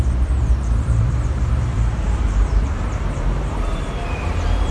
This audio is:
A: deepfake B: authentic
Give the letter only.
A